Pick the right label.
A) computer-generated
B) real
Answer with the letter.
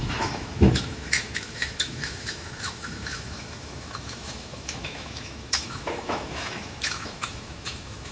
A